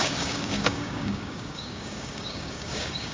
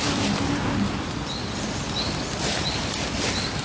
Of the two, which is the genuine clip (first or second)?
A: second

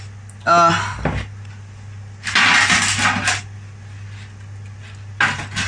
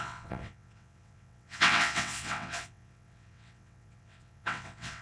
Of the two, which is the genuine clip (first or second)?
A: first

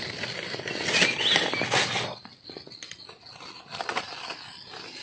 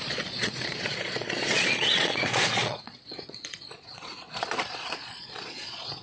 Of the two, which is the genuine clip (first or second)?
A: first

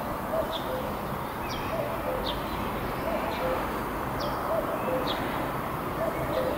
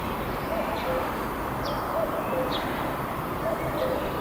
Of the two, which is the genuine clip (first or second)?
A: first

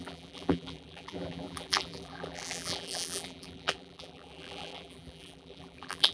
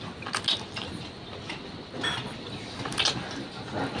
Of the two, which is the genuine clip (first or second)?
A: second